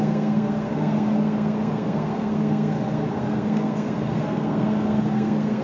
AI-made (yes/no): yes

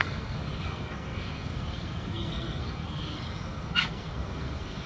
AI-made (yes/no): yes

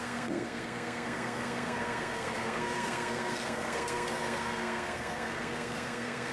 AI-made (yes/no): yes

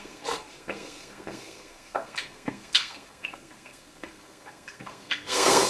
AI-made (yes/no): yes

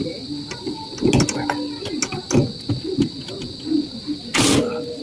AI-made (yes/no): no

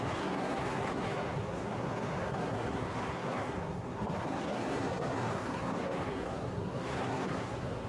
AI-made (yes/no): yes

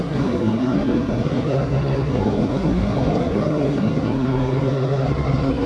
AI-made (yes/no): yes